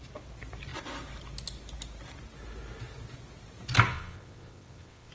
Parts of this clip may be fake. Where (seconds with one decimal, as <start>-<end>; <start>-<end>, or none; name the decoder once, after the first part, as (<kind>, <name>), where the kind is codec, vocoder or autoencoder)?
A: 3.9-5.1 (vocoder, WaveNeXt)